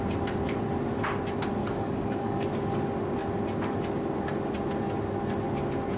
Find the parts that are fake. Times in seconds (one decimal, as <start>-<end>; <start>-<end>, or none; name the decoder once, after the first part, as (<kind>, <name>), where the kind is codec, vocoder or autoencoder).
1.6-2.5 (codec, DAC)